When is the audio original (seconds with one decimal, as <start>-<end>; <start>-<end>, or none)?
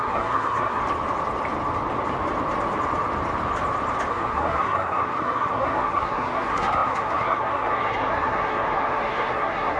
0.8-4.1